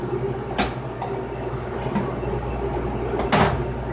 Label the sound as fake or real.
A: real